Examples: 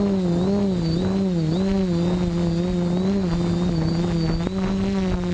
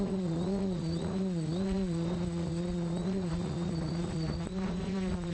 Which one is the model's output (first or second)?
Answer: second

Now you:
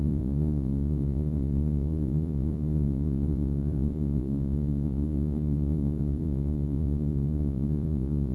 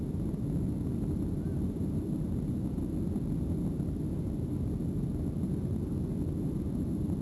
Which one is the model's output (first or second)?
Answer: first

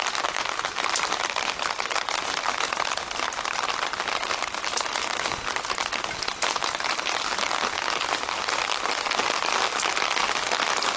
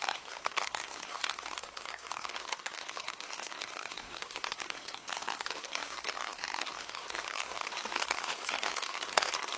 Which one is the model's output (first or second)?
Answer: second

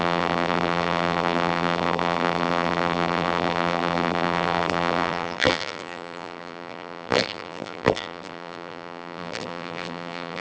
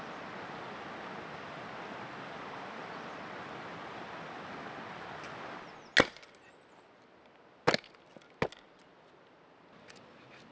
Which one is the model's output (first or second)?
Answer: first